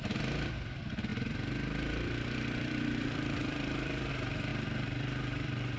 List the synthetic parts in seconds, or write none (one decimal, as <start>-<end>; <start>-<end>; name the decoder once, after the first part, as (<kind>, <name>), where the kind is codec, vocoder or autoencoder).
1.1-4.1 (vocoder, BigVGAN v2); 4.5-5.8